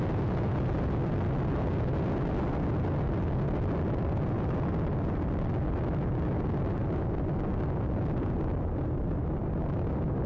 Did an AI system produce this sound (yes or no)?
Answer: no